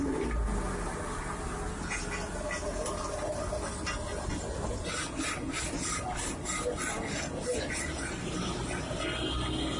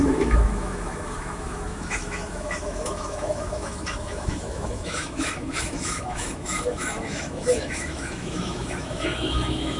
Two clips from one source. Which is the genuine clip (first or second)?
first